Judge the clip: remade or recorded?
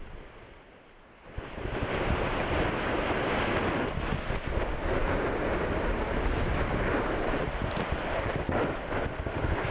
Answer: recorded